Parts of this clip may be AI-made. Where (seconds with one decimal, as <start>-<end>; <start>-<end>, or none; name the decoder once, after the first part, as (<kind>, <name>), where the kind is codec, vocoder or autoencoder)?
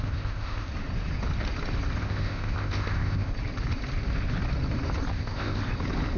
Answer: 0.0-0.7 (codec, ZipCodec); 2.0-3.3; 5.1-5.6